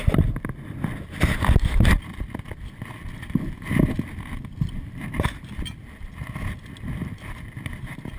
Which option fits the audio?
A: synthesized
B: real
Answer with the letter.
B